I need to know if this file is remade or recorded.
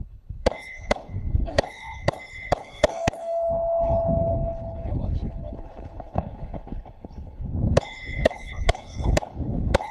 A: remade